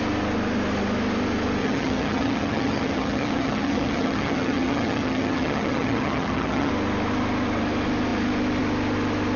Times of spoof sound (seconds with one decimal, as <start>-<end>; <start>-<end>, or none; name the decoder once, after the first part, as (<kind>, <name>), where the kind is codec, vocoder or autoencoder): 1.6-6.7 (vocoder, HiFi-GAN)